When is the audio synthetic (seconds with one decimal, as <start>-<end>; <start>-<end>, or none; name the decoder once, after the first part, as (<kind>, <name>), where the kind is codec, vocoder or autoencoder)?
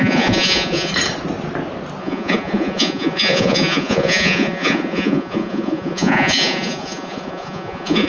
0.0-0.9 (vocoder, Vocos); 2.0-8.1